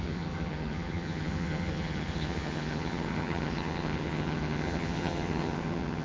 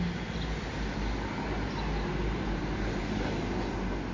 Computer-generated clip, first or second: first